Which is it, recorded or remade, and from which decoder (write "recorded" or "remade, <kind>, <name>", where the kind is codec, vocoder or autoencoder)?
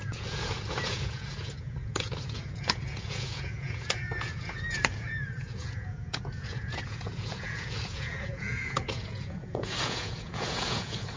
remade, vocoder, Vocos